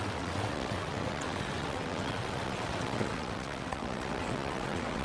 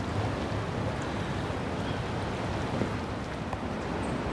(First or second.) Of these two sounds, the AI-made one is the first